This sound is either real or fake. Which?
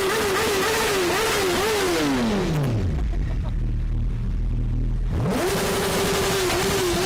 real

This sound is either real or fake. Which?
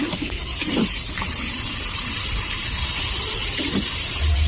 real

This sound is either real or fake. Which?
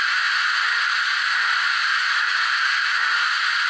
real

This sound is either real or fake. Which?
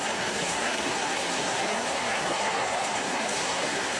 fake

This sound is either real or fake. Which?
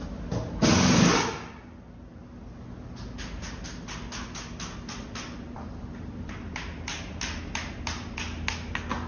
real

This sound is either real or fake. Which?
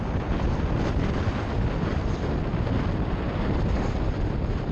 real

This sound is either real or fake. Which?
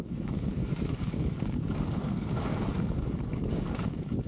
fake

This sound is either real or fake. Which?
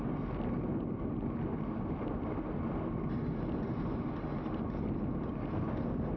real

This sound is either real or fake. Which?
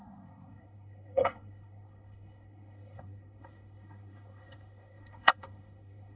fake